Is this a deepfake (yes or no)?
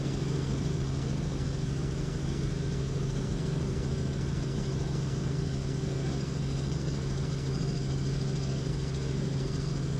yes